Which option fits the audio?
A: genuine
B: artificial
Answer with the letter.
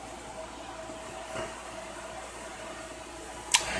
A